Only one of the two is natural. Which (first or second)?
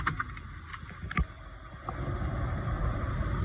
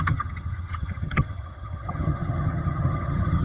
first